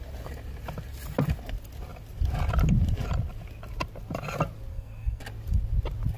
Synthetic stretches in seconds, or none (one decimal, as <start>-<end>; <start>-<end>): 4.7-5.2